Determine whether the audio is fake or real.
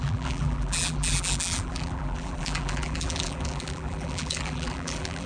fake